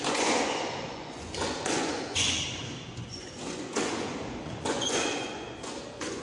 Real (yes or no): no